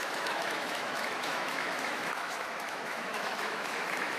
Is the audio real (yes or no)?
no